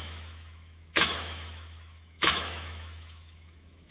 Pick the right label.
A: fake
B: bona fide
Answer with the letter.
A